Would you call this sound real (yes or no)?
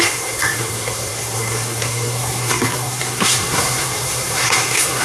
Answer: no